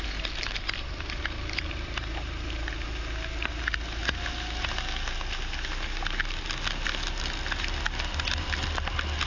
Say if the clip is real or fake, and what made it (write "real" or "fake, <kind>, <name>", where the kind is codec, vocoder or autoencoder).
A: real